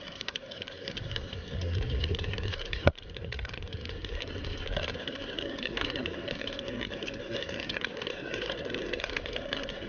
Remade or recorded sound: remade